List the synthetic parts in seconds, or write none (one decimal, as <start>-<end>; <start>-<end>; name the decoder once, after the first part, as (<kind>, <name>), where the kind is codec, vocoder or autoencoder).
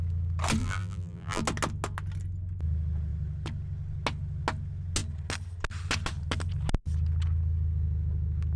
0.6-1.4 (vocoder, BigVGAN v2)